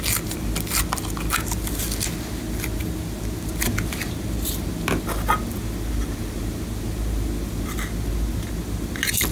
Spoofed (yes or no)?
no